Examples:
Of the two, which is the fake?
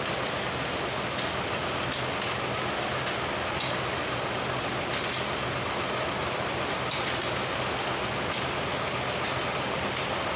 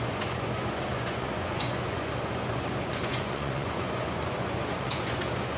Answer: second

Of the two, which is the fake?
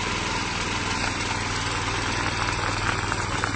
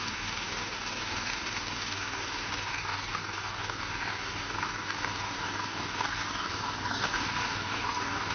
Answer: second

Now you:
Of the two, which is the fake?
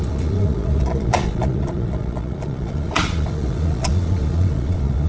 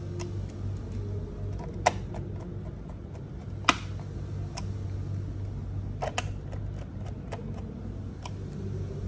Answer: first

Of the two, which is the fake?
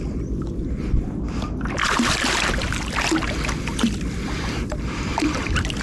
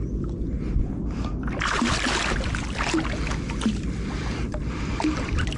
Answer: first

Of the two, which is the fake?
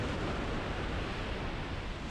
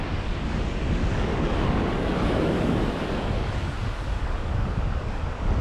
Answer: second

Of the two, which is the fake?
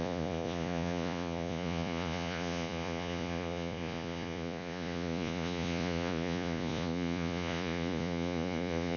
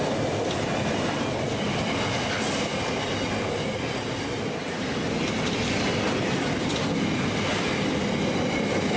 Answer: first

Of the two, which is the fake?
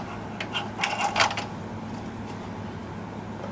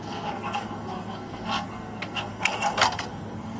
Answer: second